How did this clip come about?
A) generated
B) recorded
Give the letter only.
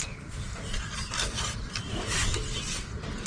B